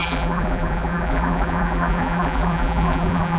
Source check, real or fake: fake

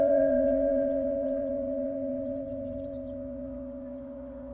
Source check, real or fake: fake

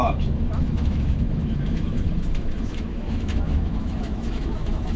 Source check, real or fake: fake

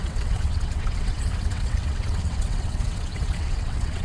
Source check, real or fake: fake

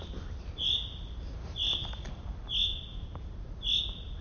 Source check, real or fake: real